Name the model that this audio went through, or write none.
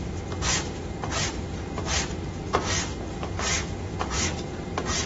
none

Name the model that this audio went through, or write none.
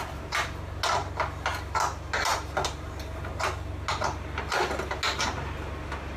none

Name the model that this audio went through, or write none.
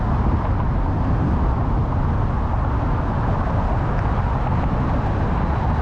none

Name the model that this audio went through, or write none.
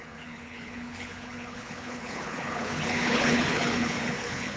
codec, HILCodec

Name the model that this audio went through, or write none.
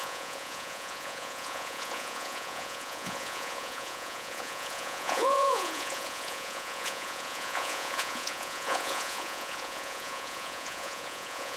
vocoder, Vocos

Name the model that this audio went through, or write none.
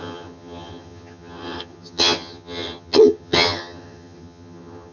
vocoder, HiFi-GAN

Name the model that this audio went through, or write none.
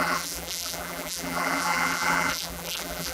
vocoder, BigVGAN v2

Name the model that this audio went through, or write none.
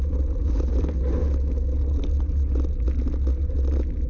none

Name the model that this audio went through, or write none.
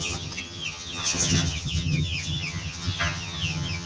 vocoder, HiFi-GAN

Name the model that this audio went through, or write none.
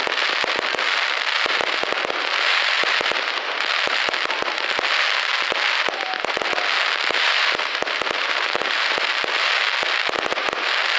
none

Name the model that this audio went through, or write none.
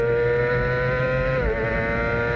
none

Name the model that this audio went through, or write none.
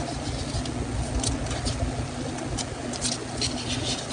none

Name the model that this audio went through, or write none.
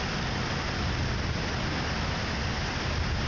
none